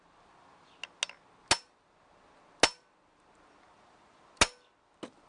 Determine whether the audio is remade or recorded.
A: recorded